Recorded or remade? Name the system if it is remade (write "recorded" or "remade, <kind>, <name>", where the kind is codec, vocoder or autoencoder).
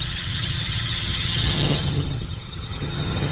remade, vocoder, HiFi-GAN